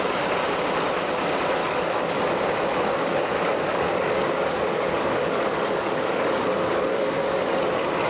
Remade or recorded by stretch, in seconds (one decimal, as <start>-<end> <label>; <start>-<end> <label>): 0.0-1.6 recorded; 1.6-2.2 remade; 2.2-2.7 recorded; 2.7-7.6 remade; 7.6-8.1 recorded